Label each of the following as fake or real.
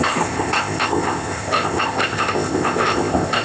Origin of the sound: fake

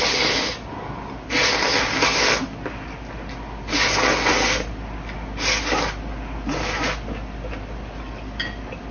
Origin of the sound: real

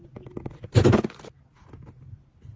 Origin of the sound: real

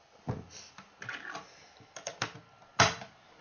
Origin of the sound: real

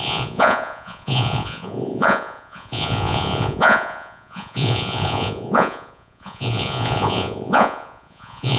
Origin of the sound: fake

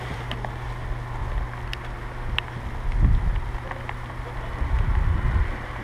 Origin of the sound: real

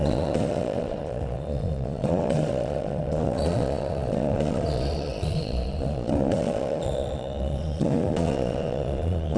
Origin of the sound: fake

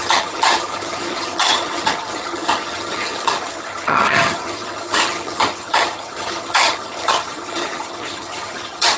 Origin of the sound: fake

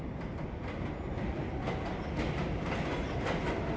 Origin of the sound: real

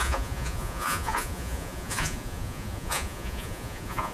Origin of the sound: fake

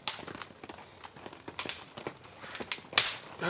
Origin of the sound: real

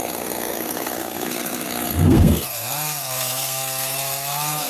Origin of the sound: fake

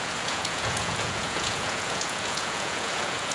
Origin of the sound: fake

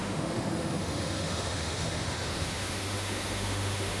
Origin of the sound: fake